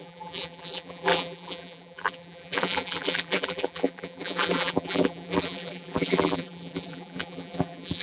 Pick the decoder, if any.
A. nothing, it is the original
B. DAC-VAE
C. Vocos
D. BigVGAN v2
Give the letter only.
D